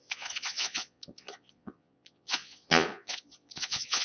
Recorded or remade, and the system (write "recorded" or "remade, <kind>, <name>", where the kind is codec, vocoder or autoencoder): remade, vocoder, Vocos